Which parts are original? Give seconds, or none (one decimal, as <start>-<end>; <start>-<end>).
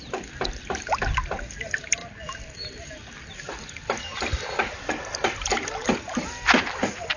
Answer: 0.0-2.0; 3.4-4.1; 4.9-7.2